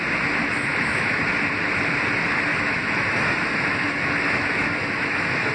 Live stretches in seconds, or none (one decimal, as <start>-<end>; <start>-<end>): 0.0-0.4; 1.2-2.5

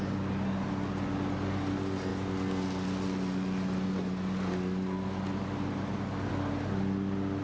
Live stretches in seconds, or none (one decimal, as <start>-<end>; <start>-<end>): 0.0-7.4

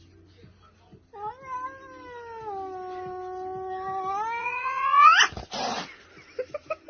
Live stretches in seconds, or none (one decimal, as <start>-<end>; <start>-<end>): 0.0-4.4; 5.1-6.9

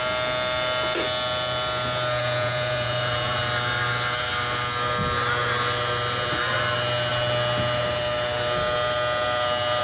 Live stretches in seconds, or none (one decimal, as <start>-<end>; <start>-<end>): 0.0-2.2; 3.4-9.8

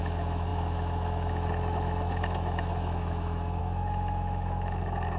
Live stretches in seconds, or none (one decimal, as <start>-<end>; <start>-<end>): none

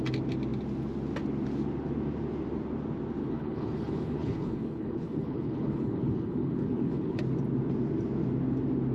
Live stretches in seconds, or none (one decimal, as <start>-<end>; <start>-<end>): 0.0-3.2; 7.2-8.9